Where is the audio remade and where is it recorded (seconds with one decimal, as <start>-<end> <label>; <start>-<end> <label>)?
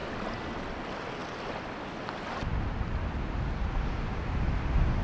0.0-5.0 recorded